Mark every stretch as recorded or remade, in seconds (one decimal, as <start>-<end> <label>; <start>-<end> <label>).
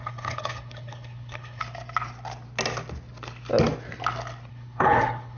0.0-1.6 remade; 1.6-4.5 recorded; 4.5-5.4 remade